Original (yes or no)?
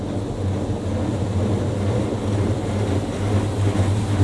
yes